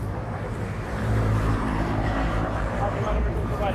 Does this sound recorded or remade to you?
remade